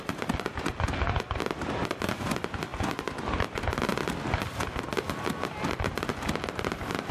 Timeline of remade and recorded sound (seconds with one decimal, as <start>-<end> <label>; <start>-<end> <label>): 0.0-7.1 recorded